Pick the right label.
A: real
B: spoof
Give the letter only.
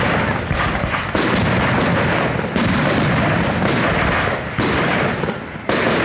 A